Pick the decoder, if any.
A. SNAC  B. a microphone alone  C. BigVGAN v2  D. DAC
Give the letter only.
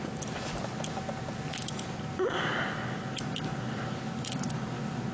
B